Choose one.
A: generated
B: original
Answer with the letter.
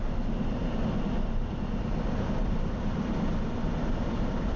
B